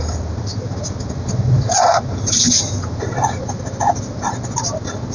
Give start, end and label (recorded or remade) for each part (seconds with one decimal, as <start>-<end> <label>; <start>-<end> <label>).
0.0-0.5 recorded; 0.5-3.6 remade; 3.6-5.1 recorded